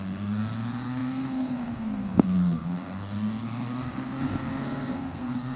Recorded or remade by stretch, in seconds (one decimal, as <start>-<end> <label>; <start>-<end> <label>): 0.0-5.6 remade